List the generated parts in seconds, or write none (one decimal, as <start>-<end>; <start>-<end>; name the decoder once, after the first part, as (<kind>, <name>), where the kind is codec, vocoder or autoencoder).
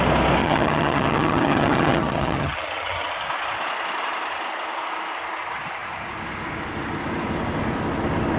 0.4-3.1 (vocoder, HiFi-GAN)